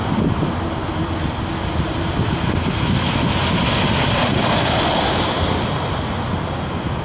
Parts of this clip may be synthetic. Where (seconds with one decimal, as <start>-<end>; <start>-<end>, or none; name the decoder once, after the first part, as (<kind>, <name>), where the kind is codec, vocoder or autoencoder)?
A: 0.0-0.5 (vocoder, BigVGAN v2)